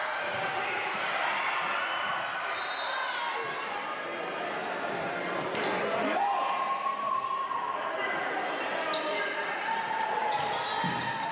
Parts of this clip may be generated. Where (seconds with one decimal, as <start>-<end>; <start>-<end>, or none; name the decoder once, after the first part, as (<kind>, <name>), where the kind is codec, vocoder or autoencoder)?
none